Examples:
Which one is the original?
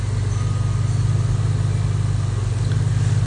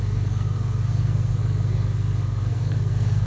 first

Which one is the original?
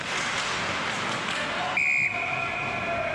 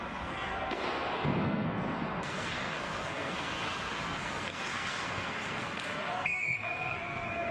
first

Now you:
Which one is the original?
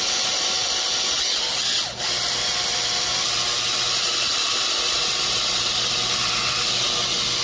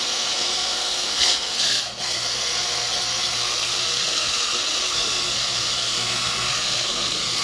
first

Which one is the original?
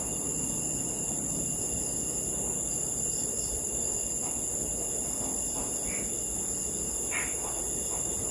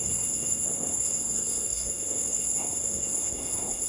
first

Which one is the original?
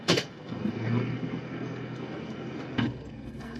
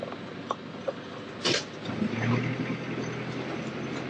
second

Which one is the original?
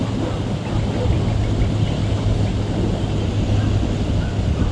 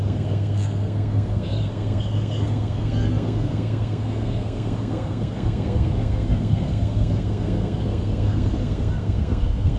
first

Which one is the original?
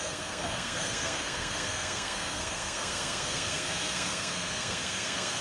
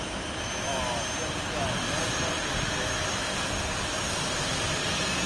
second